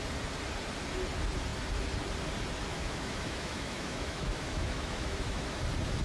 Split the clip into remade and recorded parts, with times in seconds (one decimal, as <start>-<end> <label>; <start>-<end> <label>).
0.0-2.7 recorded; 2.7-5.6 remade; 5.6-6.0 recorded